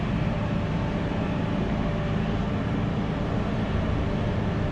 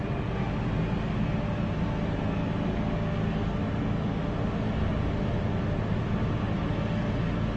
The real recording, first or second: second